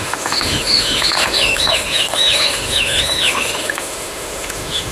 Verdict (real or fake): fake